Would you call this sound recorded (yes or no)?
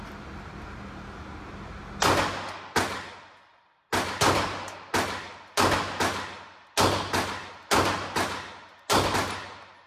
yes